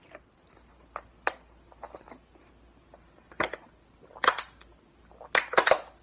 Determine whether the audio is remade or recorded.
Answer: recorded